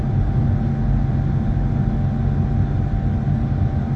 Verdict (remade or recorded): recorded